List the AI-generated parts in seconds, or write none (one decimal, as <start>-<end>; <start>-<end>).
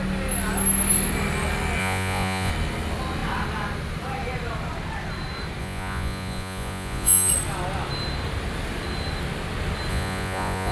1.8-2.5; 5.6-7.3; 9.9-10.7